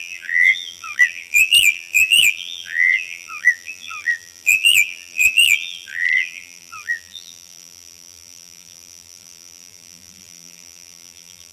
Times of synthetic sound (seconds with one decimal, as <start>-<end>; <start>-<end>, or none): 0.0-11.5